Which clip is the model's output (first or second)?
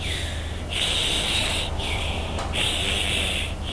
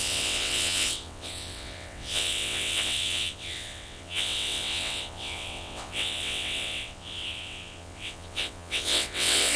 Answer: second